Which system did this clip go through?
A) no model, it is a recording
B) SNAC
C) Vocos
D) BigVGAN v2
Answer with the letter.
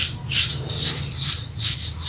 A